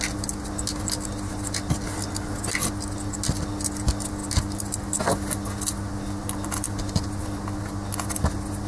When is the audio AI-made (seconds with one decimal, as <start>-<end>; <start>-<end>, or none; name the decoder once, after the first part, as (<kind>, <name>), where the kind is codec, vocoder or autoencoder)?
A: none